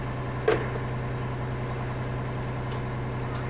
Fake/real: real